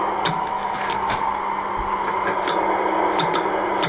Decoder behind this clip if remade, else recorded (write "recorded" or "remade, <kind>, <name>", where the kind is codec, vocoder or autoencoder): recorded